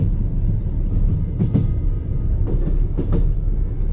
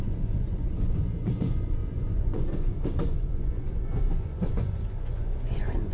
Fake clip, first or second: second